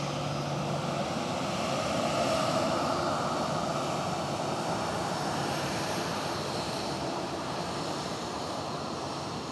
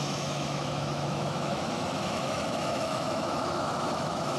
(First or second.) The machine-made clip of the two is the second